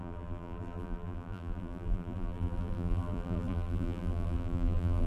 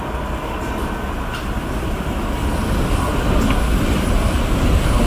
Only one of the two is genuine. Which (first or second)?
second